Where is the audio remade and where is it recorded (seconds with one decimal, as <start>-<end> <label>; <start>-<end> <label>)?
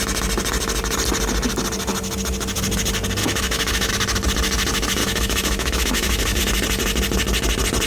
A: 0.0-3.2 recorded; 3.2-3.9 remade; 3.9-5.0 recorded; 5.0-6.4 remade; 6.4-7.9 recorded